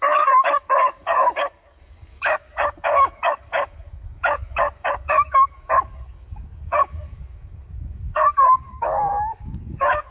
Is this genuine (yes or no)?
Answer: no